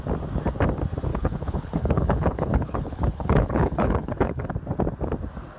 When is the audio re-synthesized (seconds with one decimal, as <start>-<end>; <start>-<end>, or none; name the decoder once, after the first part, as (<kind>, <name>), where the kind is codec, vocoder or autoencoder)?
1.1-4.5 (codec, HILCodec)